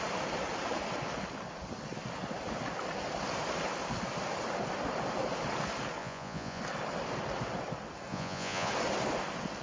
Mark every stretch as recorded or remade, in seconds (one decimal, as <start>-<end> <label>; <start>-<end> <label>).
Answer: 0.0-6.0 recorded; 6.0-6.6 remade; 6.6-8.1 recorded; 8.1-8.7 remade; 8.7-9.6 recorded